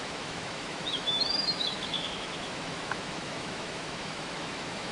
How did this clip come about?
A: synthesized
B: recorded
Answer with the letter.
A